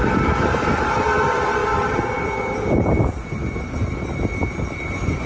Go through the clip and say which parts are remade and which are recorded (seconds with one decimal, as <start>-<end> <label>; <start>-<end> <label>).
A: 0.0-1.6 remade; 1.6-4.8 recorded; 4.8-5.3 remade